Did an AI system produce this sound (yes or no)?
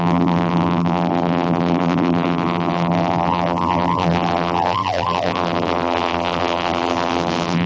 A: yes